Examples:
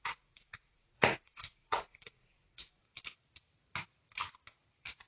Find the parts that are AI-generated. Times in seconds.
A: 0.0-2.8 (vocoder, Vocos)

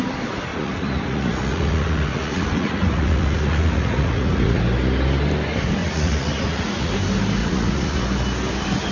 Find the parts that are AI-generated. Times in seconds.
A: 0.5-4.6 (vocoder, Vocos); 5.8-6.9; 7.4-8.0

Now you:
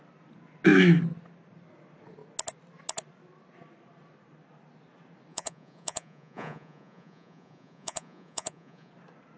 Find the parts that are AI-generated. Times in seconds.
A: 5.3-8.9 (vocoder, Vocos)